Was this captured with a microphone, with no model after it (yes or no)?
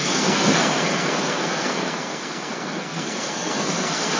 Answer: no